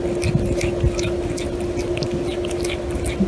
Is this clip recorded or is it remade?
recorded